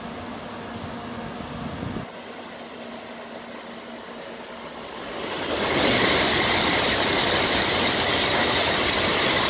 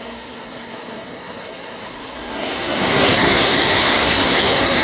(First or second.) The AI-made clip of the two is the second